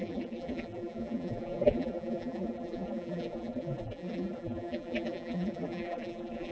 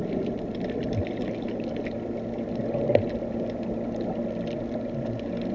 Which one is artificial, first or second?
first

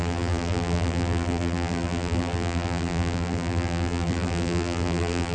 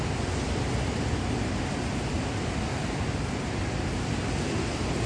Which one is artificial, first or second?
first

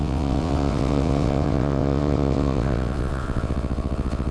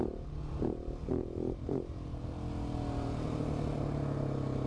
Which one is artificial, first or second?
first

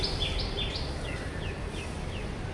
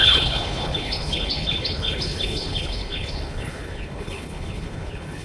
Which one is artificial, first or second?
second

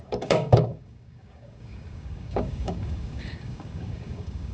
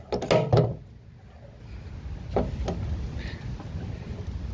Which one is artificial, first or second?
first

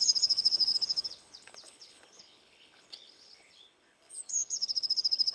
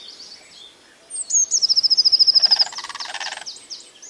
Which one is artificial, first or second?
first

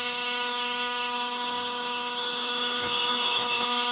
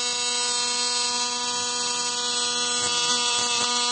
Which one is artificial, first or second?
first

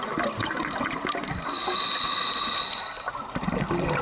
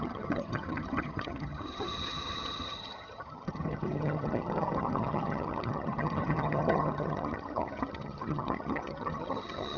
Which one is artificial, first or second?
second